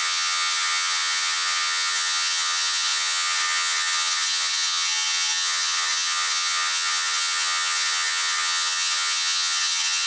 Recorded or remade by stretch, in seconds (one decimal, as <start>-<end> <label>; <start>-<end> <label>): 0.0-10.1 remade